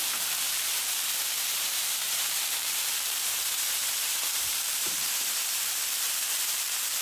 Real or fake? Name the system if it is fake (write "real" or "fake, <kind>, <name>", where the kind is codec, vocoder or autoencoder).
fake, vocoder, BigVGAN v2